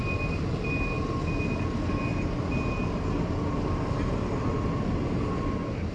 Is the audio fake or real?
real